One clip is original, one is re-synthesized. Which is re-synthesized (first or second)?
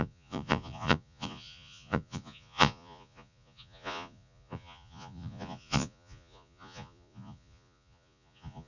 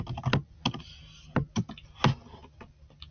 first